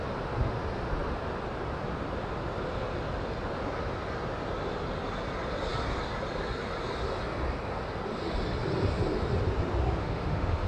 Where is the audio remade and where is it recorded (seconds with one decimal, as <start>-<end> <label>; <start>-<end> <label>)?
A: 0.0-10.0 recorded; 10.0-10.7 remade